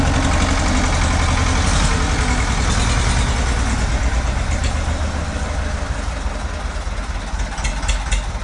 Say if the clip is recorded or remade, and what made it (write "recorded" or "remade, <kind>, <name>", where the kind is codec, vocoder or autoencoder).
recorded